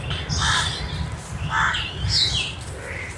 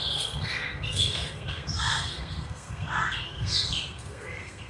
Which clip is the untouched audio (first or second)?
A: first